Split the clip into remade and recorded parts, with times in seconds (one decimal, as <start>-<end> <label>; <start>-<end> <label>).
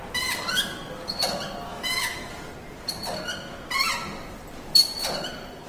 0.0-1.7 recorded; 1.7-2.3 remade; 2.3-5.7 recorded